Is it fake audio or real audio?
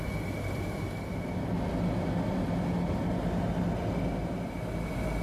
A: real